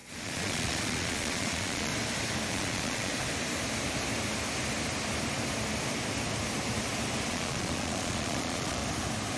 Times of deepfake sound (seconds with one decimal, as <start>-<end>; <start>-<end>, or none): 0.0-1.9; 2.5-3.1; 7.3-8.8